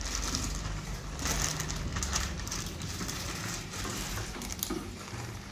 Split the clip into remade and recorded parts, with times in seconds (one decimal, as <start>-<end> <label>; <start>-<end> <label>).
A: 0.0-1.9 recorded; 1.9-4.2 remade; 4.2-5.5 recorded